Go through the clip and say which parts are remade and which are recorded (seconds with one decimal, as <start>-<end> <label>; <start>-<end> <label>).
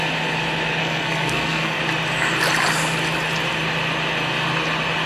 0.0-0.8 recorded; 0.8-1.8 remade; 1.8-5.1 recorded